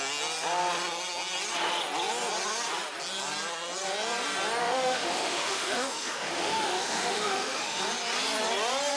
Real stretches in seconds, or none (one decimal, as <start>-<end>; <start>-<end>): 0.0-4.6; 7.8-9.0